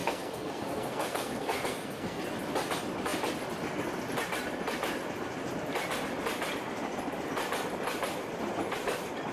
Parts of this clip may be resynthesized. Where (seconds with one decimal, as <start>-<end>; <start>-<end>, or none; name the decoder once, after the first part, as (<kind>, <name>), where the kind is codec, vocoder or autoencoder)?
0.0-2.2 (codec, SNAC)